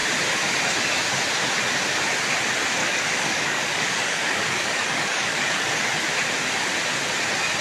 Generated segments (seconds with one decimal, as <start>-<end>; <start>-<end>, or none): 2.8-5.8